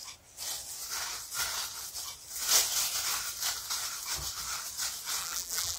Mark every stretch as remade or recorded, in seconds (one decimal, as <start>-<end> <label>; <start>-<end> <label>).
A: 0.0-5.2 recorded; 5.2-5.8 remade